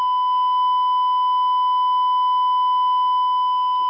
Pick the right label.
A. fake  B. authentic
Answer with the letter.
B